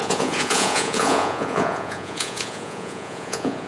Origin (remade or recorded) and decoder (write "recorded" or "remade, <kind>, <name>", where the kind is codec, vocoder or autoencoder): remade, vocoder, Vocos